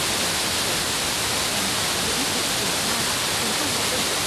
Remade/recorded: recorded